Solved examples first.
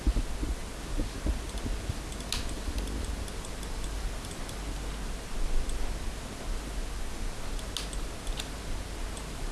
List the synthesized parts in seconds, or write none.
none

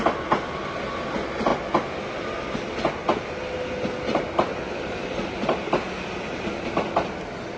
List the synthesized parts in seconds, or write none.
none

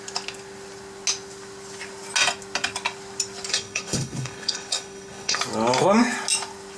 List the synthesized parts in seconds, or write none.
3.5-5.4 (codec, HILCodec)

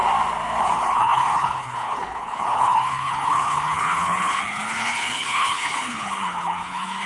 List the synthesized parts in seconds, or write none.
0.6-7.1 (codec, HILCodec)

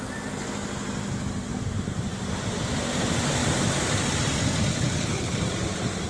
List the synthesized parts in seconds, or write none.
4.7-5.4 (codec, HILCodec)

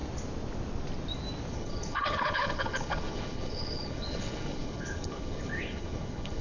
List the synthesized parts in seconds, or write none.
1.5-6.4 (codec, HILCodec)